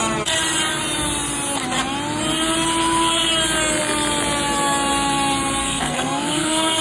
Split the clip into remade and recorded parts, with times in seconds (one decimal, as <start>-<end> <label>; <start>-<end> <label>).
0.0-5.6 recorded; 5.6-6.8 remade